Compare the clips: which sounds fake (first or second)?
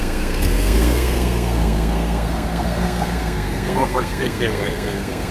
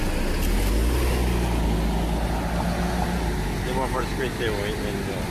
first